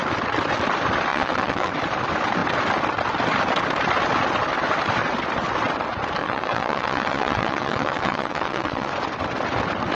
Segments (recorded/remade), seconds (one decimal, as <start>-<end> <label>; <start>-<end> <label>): 0.0-1.1 recorded; 1.1-1.7 remade; 1.7-6.2 recorded; 6.2-8.9 remade; 8.9-9.9 recorded